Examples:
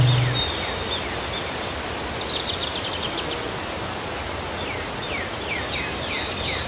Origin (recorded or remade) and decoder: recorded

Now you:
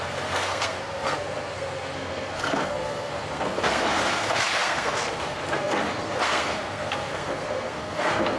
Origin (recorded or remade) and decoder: remade, codec, SNAC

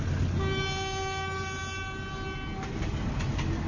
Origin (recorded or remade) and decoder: recorded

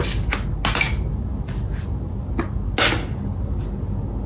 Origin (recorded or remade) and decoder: recorded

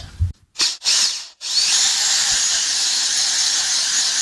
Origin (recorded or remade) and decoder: remade, vocoder, BigVGAN v2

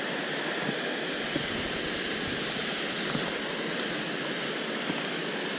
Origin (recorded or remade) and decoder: recorded